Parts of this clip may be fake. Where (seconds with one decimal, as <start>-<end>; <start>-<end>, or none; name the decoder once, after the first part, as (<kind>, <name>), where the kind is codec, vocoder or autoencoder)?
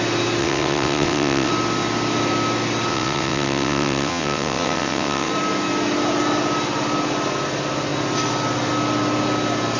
0.4-1.5 (vocoder, WaveNeXt); 2.9-5.3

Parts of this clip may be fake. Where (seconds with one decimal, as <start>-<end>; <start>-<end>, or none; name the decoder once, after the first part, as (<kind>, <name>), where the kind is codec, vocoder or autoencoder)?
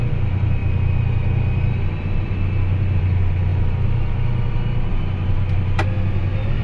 none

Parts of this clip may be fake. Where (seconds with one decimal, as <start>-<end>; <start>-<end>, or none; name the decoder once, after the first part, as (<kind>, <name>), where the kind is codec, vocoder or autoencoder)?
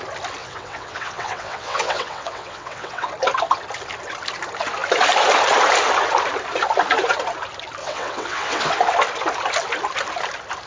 0.4-3.1 (vocoder, WaveNeXt); 7.8-8.7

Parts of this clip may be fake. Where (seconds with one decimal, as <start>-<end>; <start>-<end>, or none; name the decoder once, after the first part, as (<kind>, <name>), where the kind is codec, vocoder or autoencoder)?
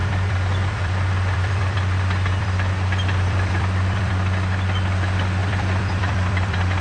0.0-4.1 (vocoder, BigVGAN v2); 5.4-6.8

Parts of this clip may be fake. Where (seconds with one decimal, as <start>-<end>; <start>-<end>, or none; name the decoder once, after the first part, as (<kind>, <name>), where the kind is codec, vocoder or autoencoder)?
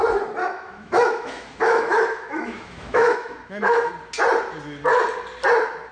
0.4-3.9 (autoencoder, DAC-VAE)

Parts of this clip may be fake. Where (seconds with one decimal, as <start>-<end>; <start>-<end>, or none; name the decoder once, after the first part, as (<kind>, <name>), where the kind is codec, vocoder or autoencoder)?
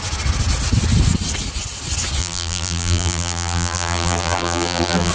2.2-5.1 (vocoder, BigVGAN v2)